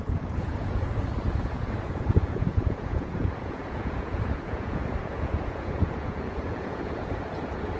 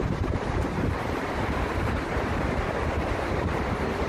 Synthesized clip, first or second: first